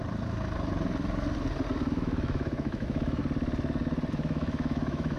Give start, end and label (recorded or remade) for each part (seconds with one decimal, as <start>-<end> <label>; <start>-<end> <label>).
0.0-1.9 recorded; 1.9-3.2 remade; 3.2-4.1 recorded; 4.1-5.2 remade